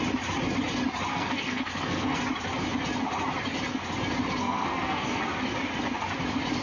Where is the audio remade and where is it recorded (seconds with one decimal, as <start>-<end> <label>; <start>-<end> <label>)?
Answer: 0.0-1.1 recorded; 1.1-2.2 remade; 2.2-4.4 recorded; 4.4-5.2 remade; 5.2-6.6 recorded